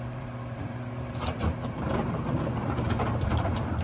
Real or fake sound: fake